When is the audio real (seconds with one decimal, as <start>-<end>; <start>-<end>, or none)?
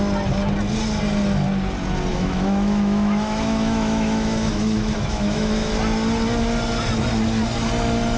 0.0-2.1; 5.7-8.2